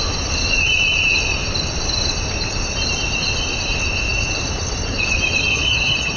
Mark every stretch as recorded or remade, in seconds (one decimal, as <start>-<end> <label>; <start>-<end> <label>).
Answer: 0.0-5.5 recorded; 5.5-6.2 remade